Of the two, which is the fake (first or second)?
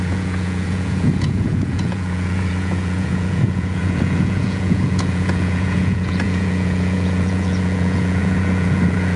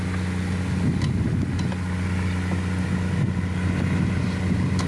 first